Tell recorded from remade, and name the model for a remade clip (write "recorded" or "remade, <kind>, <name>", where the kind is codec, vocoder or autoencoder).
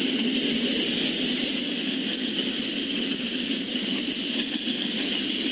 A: recorded